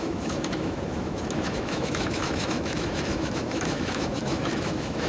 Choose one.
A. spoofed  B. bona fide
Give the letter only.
A